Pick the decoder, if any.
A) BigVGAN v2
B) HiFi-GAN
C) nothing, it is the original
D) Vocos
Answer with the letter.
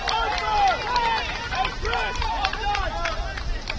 C